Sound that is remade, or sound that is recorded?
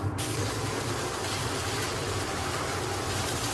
recorded